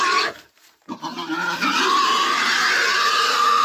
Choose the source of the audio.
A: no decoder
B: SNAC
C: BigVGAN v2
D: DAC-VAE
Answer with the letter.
C